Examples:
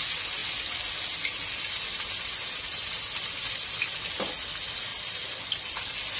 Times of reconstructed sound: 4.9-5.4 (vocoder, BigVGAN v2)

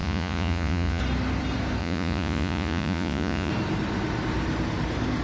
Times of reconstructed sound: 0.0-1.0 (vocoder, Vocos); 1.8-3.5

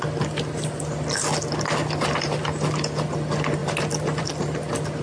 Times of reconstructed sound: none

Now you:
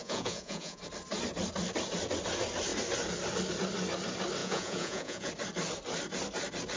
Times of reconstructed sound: 0.0-0.8 (vocoder, Vocos); 4.4-5.3

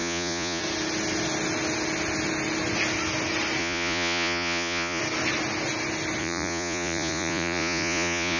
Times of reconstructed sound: 0.0-0.6 (vocoder, Vocos); 3.6-5.0; 6.2-8.4